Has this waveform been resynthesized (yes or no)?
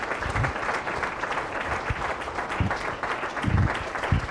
no